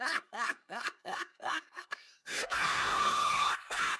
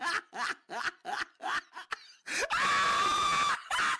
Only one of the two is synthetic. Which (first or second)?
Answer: first